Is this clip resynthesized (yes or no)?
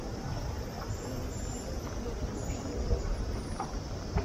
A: no